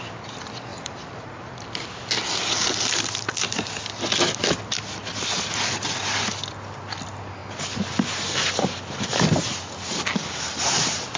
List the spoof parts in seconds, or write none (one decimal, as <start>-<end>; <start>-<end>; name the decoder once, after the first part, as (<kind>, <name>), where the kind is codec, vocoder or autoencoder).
none

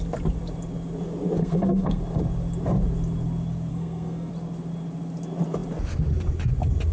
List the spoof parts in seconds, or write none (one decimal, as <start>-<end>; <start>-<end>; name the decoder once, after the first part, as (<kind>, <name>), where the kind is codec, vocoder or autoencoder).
1.4-2.0 (codec, SNAC); 3.7-4.3

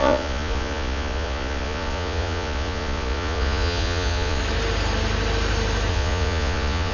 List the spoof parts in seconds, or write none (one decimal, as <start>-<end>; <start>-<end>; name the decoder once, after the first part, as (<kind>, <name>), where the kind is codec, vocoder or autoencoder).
0.0-4.4 (vocoder, Vocos); 5.9-6.9

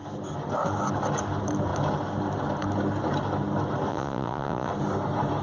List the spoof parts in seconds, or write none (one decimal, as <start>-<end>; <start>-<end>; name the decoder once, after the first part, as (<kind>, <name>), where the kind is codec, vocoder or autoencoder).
3.9-4.7 (vocoder, Vocos)

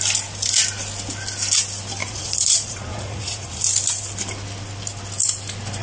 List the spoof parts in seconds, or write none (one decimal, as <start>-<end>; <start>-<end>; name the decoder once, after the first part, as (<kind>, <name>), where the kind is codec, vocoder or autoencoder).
2.0-3.6 (vocoder, Vocos)

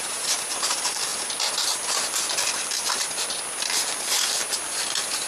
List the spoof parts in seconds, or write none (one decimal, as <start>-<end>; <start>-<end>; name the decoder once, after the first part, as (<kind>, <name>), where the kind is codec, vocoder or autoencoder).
none